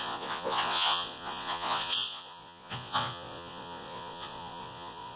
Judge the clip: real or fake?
fake